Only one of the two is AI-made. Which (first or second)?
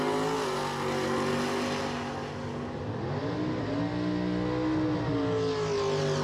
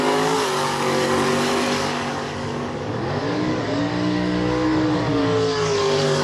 second